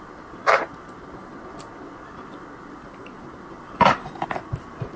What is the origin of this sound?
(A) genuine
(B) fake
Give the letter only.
A